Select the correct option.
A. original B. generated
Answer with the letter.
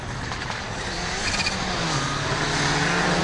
A